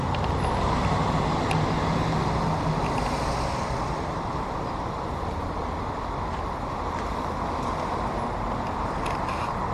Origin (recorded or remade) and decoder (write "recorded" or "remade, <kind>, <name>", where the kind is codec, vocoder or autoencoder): recorded